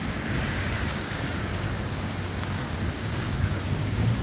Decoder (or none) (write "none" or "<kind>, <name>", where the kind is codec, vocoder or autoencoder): codec, DAC